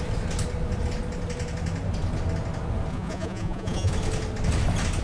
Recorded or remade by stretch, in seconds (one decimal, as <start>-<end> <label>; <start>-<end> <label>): 0.0-2.9 recorded; 2.9-3.9 remade; 3.9-5.0 recorded